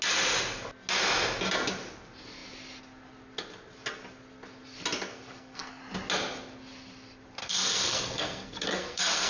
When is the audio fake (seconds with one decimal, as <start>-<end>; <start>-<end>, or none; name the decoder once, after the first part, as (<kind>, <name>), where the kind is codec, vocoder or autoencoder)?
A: 5.1-5.8 (codec, SNAC); 7.4-9.3